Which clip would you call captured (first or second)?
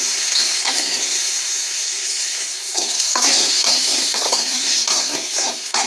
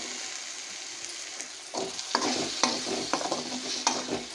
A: second